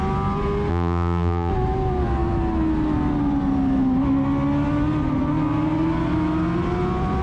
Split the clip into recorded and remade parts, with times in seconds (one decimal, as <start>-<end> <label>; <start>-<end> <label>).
0.0-0.7 recorded; 0.7-1.5 remade; 1.5-7.2 recorded